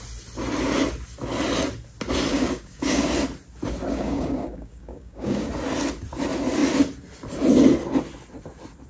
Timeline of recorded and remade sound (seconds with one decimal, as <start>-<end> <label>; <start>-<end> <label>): 0.0-2.3 recorded; 2.3-3.0 remade; 3.0-3.9 recorded; 3.9-5.5 remade; 5.5-8.9 recorded